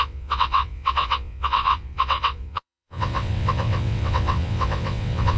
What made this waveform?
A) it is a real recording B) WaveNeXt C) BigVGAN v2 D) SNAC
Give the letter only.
B